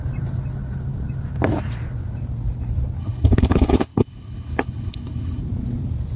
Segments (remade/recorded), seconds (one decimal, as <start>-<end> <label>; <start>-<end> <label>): 0.0-3.0 recorded; 3.0-5.4 remade; 5.4-6.2 recorded